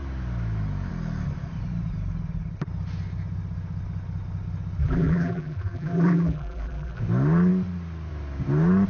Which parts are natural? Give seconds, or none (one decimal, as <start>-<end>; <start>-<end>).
0.0-4.8; 7.0-8.9

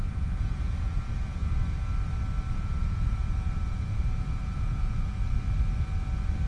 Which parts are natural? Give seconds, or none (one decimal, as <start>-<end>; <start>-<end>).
1.4-2.5; 5.2-6.5

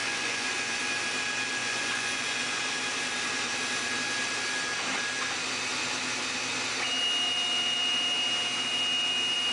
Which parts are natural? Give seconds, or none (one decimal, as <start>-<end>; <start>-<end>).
0.8-1.6; 2.6-9.5